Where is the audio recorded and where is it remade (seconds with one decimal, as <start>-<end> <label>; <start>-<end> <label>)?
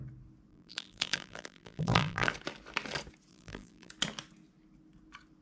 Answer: 0.0-0.5 recorded; 0.5-2.3 remade; 2.3-3.3 recorded; 3.3-3.9 remade; 3.9-5.4 recorded